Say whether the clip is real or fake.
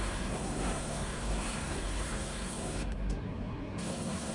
fake